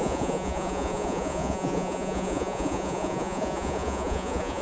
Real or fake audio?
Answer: fake